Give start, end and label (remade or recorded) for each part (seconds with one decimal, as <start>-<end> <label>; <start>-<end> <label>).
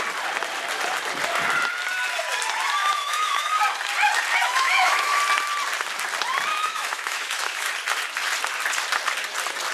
0.0-2.8 recorded; 2.8-3.6 remade; 3.6-4.4 recorded; 4.4-5.2 remade; 5.2-6.5 recorded; 6.5-7.7 remade; 7.7-9.7 recorded